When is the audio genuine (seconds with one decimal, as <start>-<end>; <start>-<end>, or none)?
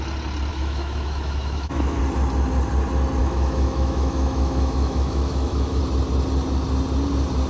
0.0-0.5; 2.0-3.2; 5.8-7.5